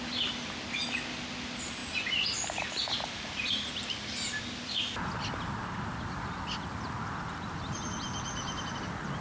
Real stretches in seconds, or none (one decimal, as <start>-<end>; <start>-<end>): 0.0-9.2